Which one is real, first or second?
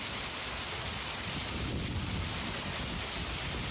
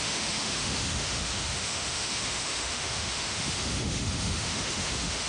first